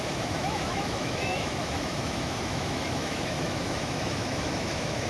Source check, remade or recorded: remade